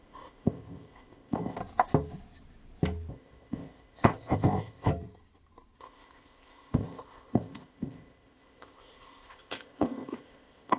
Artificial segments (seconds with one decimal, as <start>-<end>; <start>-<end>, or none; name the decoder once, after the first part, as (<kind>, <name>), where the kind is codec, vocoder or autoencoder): 0.0-1.6 (codec, ZipCodec); 3.1-4.9; 5.8-10.8